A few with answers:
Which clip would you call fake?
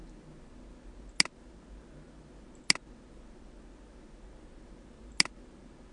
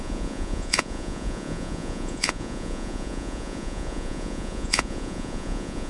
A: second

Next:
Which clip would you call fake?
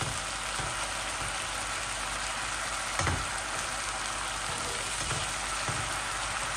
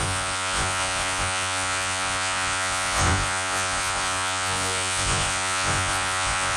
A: second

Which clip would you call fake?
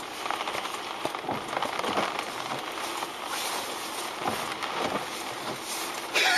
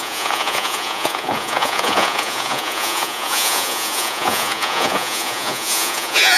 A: second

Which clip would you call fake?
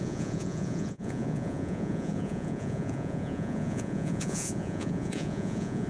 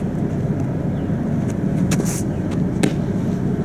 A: first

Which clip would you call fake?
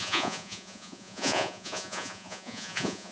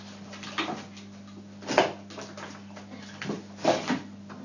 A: first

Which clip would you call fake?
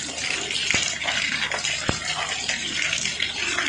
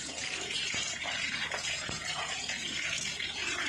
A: second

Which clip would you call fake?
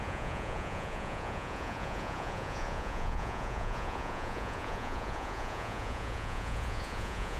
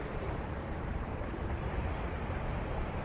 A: first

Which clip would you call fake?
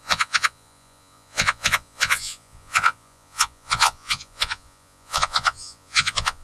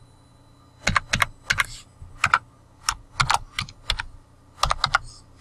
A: first